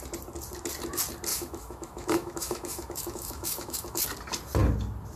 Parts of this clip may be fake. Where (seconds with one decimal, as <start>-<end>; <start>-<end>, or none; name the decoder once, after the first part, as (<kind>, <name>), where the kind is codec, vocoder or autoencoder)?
1.3-4.0 (autoencoder, DAC-VAE)